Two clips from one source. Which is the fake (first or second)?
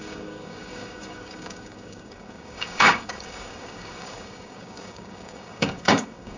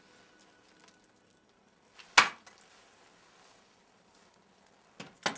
first